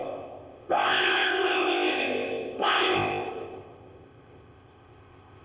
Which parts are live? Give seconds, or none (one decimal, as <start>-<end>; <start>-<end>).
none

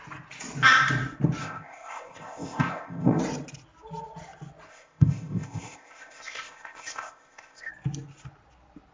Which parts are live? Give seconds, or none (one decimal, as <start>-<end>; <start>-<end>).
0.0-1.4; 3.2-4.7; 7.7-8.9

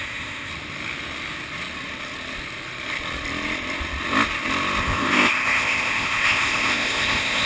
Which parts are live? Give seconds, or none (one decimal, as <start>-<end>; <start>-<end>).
0.5-4.8